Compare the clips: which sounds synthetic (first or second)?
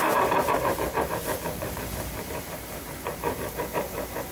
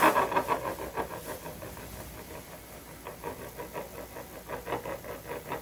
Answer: first